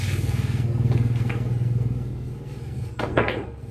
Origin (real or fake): fake